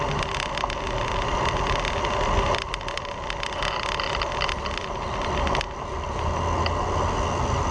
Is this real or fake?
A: real